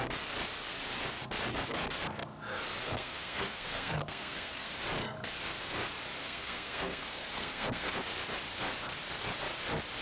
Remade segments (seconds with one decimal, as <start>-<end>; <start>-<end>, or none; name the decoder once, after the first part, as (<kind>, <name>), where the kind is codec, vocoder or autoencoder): 2.8-4.7 (codec, SNAC); 6.2-7.9